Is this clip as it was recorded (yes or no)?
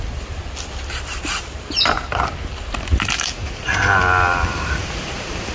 yes